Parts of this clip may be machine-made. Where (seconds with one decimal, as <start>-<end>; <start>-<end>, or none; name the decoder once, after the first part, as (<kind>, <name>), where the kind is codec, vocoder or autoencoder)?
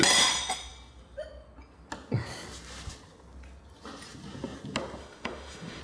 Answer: 5.0-5.8 (autoencoder, DAC-VAE)